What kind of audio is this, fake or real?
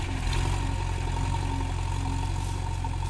real